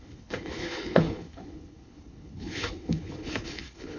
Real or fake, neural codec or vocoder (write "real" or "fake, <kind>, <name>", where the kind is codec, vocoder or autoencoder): fake, codec, HILCodec